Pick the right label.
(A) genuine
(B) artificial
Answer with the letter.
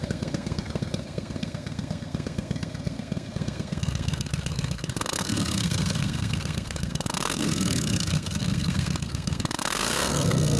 B